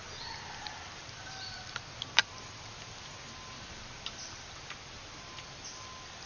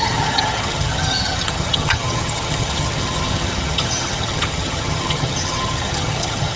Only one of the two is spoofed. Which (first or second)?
second